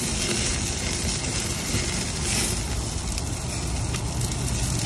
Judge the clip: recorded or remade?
recorded